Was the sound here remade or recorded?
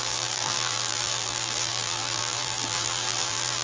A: remade